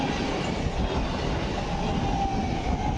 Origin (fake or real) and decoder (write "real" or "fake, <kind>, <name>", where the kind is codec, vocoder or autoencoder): real